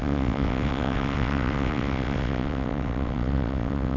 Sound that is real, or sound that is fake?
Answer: fake